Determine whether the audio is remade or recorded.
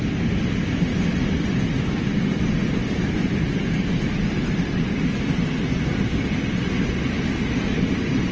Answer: recorded